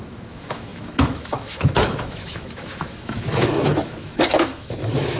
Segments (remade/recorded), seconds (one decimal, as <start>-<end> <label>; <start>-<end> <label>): 0.0-5.2 remade